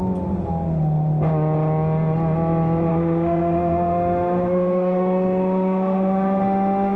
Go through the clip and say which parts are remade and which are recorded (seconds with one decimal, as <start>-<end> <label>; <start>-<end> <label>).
0.0-2.9 recorded; 2.9-7.0 remade